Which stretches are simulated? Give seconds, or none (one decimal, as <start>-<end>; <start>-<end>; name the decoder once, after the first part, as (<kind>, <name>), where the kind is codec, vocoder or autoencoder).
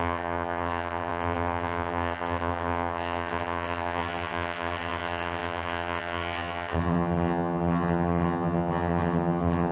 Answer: 0.0-9.7 (vocoder, HiFi-GAN)